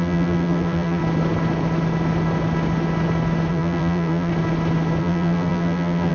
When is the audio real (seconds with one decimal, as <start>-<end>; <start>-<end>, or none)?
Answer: 1.0-3.5; 4.3-5.0